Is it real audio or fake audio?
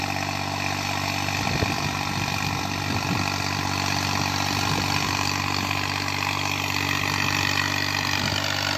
real